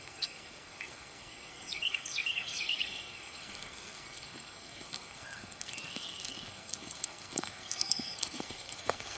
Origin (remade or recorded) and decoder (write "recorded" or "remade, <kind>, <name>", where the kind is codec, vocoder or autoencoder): remade, codec, SNAC